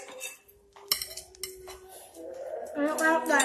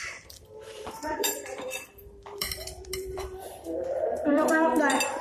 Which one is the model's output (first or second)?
second